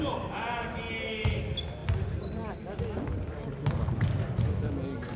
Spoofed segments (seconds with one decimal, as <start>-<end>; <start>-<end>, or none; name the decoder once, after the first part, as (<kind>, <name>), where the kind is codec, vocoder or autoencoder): none